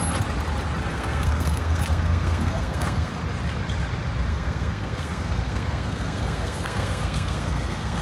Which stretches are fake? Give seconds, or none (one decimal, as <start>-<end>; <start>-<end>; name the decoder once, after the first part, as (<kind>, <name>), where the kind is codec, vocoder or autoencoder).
0.9-3.1 (codec, SNAC); 4.3-8.0